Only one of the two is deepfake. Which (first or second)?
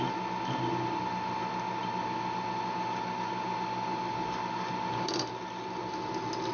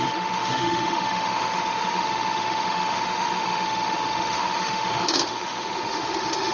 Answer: second